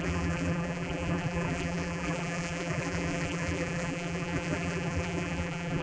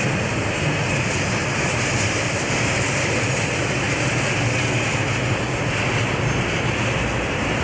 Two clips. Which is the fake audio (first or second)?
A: first